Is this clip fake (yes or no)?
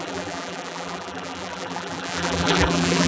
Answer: yes